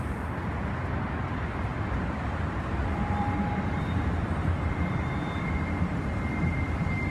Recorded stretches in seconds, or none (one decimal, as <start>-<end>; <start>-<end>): 0.0-1.7; 6.0-7.1